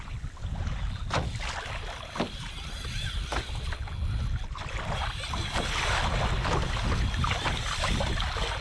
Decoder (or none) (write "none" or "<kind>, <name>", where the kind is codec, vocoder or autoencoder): none